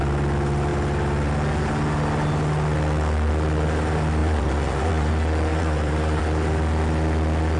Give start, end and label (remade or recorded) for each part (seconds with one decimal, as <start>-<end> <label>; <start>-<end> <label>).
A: 0.0-4.2 recorded; 4.2-5.1 remade; 5.1-5.5 recorded; 5.5-6.2 remade; 6.2-7.6 recorded